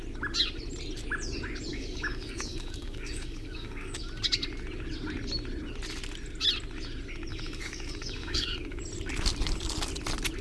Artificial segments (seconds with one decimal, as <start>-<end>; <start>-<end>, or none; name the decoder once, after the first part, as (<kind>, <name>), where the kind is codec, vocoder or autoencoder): 1.7-4.0 (codec, DAC); 7.3-8.8